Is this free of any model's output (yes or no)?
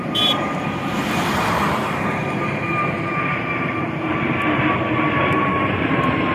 no